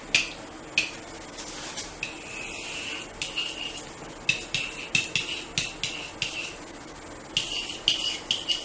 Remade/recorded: recorded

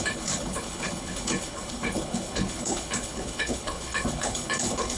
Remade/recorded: remade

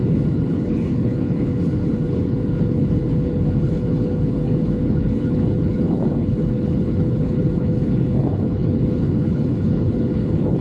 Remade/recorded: remade